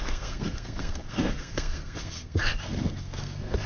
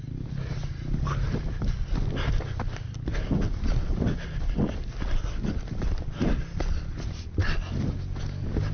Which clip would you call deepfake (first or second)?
first